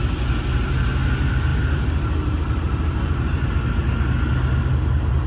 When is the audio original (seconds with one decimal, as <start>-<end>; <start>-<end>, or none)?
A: 0.0-5.3